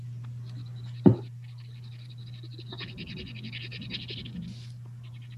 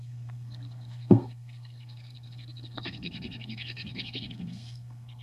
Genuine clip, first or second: first